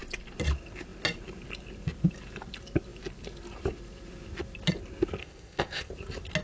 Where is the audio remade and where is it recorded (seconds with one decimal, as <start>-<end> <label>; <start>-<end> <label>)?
0.0-5.2 recorded; 5.2-5.9 remade; 5.9-6.4 recorded